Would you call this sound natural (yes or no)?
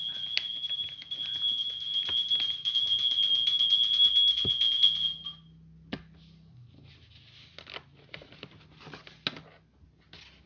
yes